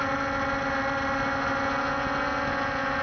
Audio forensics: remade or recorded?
recorded